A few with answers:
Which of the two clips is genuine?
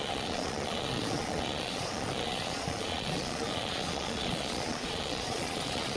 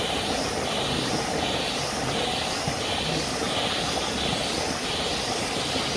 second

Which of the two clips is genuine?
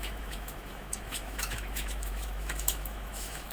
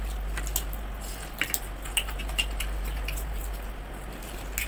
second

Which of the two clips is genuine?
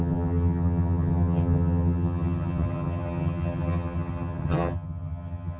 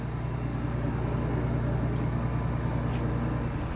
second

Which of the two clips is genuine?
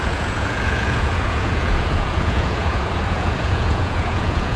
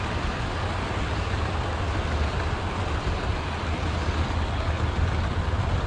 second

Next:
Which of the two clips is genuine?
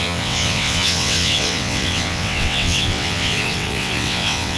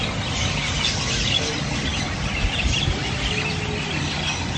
second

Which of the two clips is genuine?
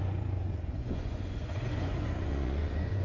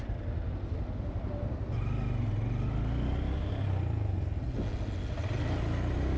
second